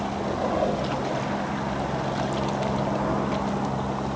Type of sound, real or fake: real